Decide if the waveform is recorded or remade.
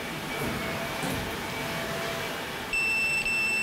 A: remade